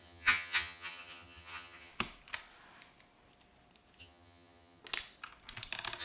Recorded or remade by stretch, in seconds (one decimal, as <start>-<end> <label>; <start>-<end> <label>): 0.0-1.9 remade; 1.9-4.0 recorded; 4.0-4.8 remade; 4.8-6.0 recorded

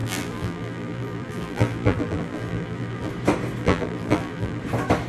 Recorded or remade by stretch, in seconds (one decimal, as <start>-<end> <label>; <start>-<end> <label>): 0.0-3.1 remade; 3.1-3.6 recorded; 3.6-4.6 remade; 4.6-5.1 recorded

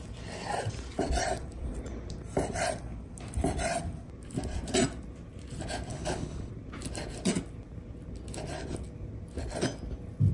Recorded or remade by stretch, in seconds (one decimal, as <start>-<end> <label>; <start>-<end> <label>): 0.0-5.9 recorded; 5.9-6.5 remade; 6.5-10.3 recorded

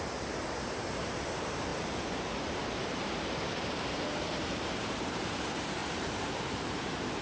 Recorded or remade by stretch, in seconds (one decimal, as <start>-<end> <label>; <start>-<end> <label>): 0.0-1.7 remade; 1.7-2.2 recorded; 2.2-3.0 remade; 3.0-3.6 recorded; 3.6-7.2 remade

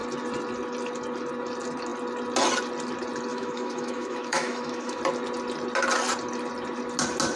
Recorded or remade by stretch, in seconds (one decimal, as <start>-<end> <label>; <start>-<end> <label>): 0.0-3.3 recorded; 3.3-5.0 remade; 5.0-7.4 recorded